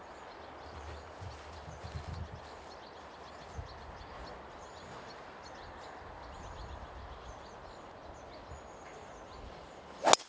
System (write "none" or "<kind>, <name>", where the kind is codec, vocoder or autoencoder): none